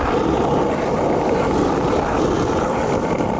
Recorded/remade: remade